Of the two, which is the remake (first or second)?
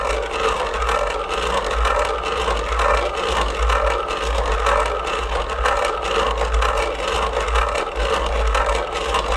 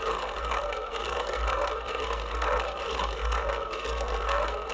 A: second